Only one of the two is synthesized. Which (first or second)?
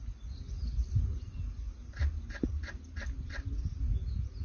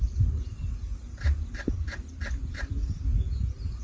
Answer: second